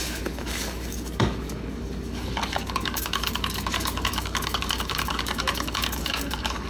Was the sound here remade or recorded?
remade